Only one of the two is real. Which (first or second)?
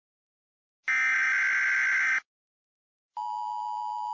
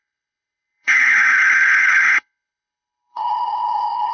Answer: first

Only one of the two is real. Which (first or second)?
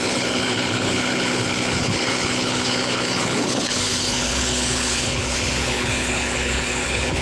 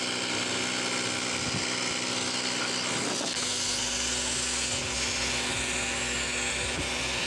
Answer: second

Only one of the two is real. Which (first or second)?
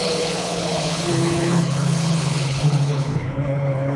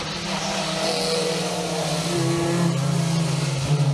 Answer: second